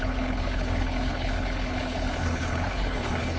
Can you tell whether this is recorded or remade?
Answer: remade